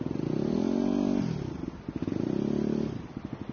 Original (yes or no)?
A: yes